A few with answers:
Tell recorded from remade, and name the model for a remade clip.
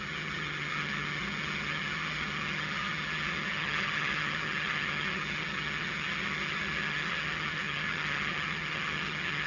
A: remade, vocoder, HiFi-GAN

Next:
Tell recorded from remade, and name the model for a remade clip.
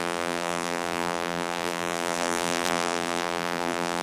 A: remade, vocoder, BigVGAN v2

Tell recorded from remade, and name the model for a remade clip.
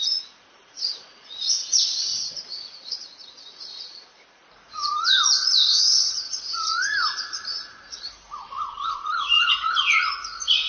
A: remade, vocoder, Vocos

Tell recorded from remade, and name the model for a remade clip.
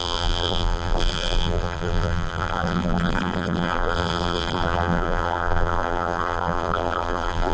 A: remade, vocoder, BigVGAN v2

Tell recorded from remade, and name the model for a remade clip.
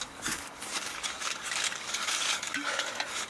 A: remade, codec, DAC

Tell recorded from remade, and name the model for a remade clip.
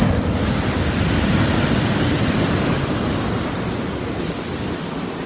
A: recorded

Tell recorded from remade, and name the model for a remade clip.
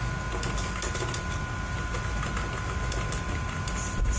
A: recorded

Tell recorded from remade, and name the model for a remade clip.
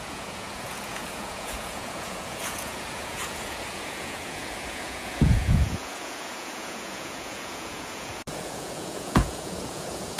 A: remade, vocoder, Vocos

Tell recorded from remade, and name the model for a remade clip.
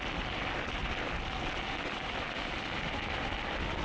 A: recorded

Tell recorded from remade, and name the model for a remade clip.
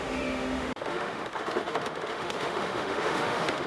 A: remade, autoencoder, DAC-VAE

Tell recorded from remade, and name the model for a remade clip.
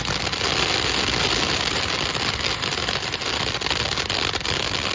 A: recorded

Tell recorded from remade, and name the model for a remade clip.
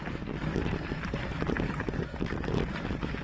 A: recorded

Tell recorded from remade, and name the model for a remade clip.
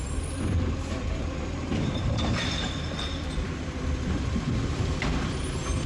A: remade, vocoder, BigVGAN v2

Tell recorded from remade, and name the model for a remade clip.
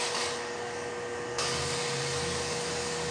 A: remade, codec, DAC